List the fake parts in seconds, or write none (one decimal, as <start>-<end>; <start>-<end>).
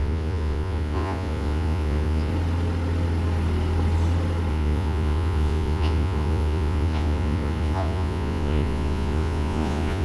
0.0-2.3; 4.5-10.0